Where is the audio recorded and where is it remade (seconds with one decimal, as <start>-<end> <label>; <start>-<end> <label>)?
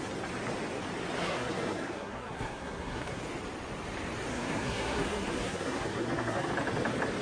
0.0-1.2 recorded; 1.2-3.2 remade; 3.2-4.3 recorded; 4.3-6.5 remade; 6.5-7.2 recorded